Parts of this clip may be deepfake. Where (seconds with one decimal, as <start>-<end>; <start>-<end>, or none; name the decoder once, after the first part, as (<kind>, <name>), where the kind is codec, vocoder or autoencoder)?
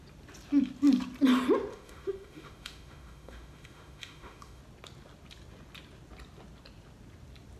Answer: 1.7-4.6 (autoencoder, DAC-VAE)